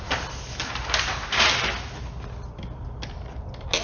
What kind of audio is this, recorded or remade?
recorded